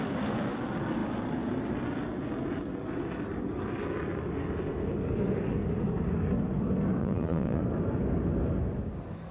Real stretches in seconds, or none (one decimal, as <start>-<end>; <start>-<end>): 0.0-7.0; 7.6-9.3